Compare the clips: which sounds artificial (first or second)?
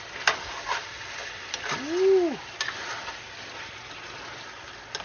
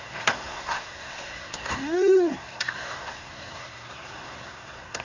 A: second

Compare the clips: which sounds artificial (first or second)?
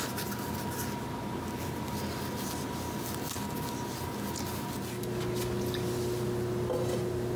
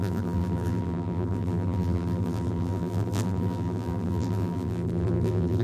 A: second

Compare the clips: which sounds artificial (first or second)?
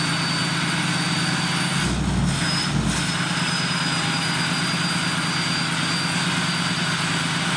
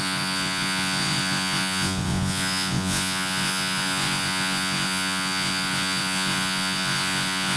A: second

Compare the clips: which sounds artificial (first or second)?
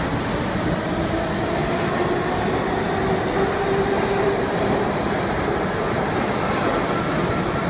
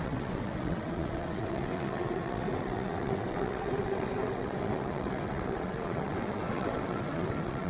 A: second